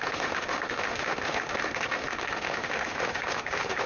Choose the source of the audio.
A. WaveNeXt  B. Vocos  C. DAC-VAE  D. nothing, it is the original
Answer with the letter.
C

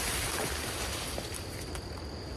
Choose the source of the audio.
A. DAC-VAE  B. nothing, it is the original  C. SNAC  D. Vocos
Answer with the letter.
B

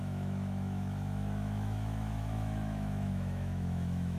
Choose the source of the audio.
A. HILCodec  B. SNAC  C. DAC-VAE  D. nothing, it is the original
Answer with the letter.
C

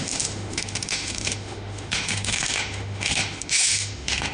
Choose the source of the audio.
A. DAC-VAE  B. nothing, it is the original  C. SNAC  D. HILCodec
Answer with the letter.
A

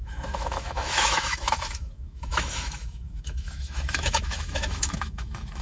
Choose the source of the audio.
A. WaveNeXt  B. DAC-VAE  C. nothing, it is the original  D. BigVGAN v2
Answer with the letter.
B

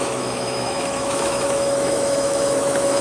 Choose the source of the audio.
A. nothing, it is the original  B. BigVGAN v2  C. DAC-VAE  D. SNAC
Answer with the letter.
C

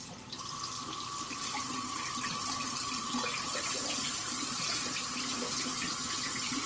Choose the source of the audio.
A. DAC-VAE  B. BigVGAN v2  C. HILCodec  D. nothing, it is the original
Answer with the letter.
D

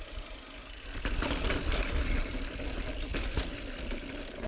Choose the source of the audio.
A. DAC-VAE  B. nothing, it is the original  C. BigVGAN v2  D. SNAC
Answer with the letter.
B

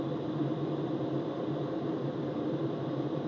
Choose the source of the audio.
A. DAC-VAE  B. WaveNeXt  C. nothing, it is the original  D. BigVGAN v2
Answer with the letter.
C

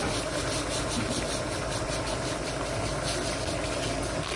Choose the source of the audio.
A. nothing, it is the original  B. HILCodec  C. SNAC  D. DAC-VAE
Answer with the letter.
A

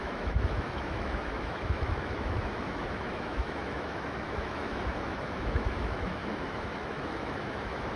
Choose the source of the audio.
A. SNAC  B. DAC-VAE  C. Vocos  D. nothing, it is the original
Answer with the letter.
B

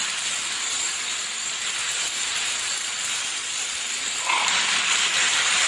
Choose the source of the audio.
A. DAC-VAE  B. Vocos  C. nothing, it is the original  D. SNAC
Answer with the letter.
C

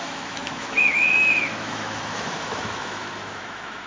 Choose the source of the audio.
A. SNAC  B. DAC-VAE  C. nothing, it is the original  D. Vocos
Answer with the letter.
B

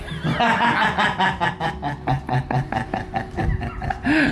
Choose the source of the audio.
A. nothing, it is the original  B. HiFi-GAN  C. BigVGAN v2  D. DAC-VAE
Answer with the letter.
A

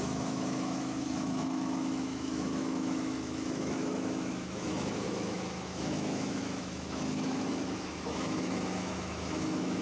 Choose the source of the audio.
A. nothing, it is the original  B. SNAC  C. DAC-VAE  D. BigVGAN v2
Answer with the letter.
C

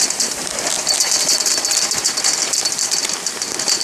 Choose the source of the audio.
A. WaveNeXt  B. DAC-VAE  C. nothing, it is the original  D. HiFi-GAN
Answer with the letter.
C